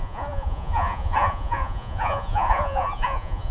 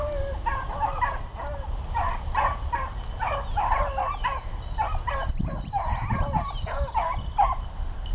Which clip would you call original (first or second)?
second